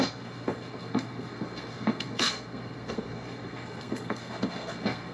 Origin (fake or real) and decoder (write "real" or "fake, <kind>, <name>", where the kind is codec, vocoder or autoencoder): fake, codec, SNAC